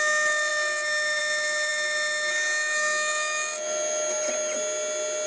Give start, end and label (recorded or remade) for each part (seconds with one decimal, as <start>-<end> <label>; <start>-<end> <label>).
0.0-5.3 recorded